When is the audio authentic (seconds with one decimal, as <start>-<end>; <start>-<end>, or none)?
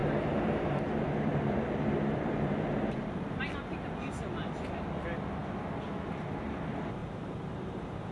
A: 3.4-7.0